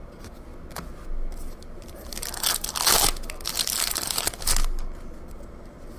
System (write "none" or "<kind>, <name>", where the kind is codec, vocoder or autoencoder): none